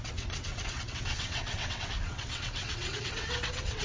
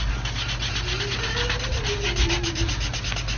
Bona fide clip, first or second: second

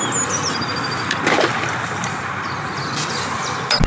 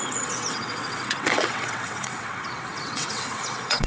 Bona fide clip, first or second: first